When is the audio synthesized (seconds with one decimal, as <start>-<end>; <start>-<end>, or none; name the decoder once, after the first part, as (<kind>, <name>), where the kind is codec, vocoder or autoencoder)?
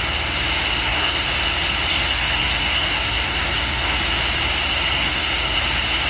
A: 0.8-1.3 (codec, SNAC); 1.9-4.0; 4.7-5.6